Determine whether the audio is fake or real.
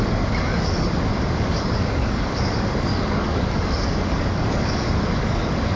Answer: fake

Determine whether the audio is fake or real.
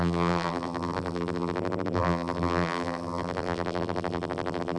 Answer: fake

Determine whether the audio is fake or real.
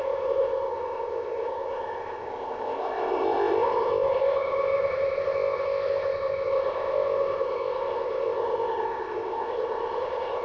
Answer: fake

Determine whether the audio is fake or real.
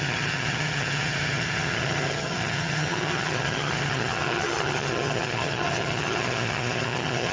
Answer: fake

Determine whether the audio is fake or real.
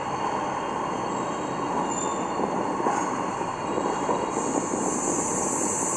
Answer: real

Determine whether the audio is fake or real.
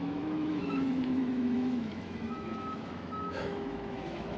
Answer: fake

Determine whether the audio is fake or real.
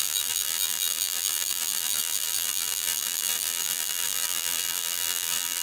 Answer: fake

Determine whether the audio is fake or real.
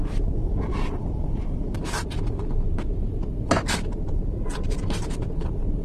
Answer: fake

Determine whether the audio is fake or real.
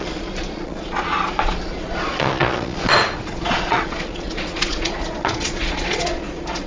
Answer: fake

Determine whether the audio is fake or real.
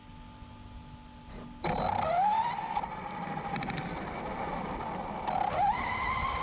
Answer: real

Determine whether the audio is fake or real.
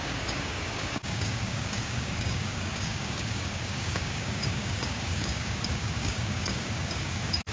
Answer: fake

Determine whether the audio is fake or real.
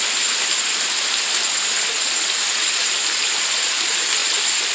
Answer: real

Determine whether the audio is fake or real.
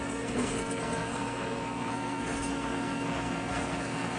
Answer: fake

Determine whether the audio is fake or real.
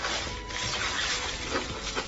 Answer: real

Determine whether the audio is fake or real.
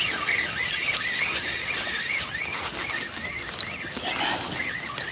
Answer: real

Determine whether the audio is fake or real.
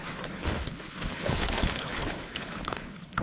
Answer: fake